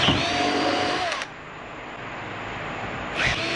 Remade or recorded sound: recorded